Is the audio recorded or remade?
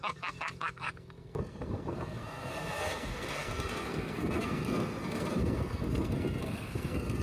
remade